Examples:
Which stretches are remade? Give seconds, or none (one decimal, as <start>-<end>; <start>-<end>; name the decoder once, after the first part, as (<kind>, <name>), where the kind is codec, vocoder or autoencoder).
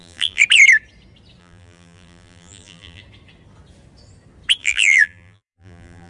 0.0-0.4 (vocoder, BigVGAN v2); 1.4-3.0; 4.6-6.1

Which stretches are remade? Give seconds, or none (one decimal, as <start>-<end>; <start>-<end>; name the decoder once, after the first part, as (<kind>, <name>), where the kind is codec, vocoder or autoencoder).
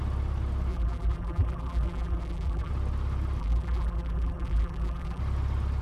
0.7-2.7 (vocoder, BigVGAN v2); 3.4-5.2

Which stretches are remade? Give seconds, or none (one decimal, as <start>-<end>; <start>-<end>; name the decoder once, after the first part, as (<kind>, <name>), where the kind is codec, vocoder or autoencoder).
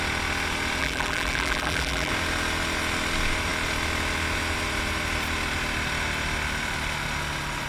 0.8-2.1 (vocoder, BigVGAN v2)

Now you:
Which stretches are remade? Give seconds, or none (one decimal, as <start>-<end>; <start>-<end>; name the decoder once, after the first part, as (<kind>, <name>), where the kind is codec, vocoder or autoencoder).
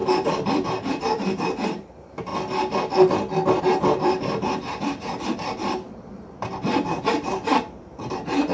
0.0-2.3 (vocoder, BigVGAN v2); 3.6-7.4; 8.0-8.5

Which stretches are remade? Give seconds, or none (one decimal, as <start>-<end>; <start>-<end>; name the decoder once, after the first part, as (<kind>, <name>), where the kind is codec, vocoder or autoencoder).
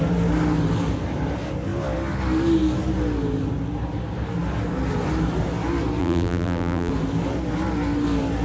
6.0-6.9 (vocoder, BigVGAN v2)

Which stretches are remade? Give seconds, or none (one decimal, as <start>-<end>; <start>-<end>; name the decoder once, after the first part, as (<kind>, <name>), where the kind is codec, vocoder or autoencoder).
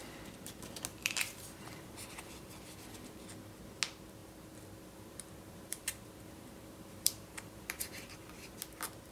0.9-2.9 (vocoder, BigVGAN v2); 4.2-8.6